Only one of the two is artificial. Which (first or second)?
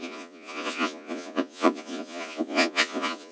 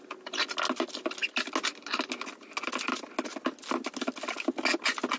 first